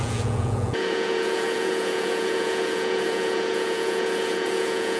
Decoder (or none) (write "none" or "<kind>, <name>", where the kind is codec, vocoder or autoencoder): vocoder, Vocos